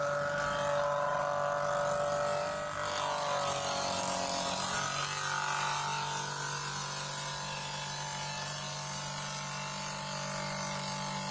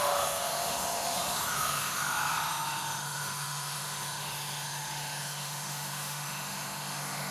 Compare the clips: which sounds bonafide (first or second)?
first